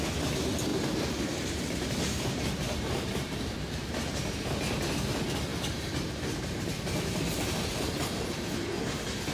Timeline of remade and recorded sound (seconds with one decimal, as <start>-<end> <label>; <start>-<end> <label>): 0.0-0.7 recorded; 0.7-3.9 remade; 3.9-5.5 recorded; 5.5-8.3 remade; 8.3-9.3 recorded